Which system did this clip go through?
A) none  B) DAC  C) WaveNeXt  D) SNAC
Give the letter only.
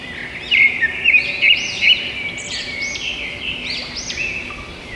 A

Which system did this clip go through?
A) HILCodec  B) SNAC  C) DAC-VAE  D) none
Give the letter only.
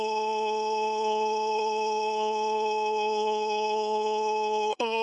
B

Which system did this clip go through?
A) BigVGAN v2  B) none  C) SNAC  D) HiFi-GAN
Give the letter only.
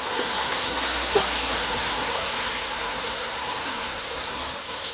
C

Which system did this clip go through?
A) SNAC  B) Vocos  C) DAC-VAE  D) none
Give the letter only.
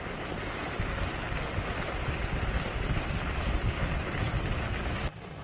D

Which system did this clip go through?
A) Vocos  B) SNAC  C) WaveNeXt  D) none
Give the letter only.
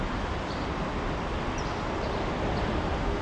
D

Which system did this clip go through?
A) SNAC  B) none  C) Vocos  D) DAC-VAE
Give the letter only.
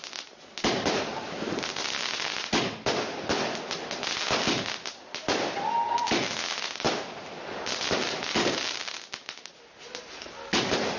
B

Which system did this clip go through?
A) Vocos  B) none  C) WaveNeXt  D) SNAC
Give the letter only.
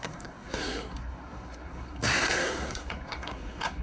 D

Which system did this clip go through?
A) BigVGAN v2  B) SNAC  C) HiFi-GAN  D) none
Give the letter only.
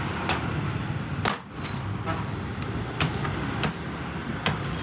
D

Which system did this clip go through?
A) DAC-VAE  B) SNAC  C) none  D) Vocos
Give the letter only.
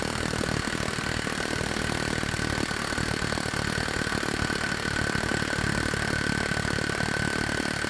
C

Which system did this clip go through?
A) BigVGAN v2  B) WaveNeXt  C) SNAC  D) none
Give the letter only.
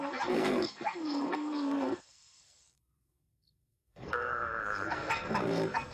C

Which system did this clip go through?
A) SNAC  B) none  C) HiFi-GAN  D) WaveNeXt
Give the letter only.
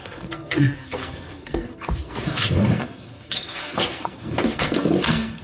A